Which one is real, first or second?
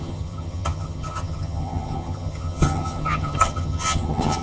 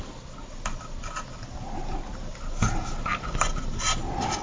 second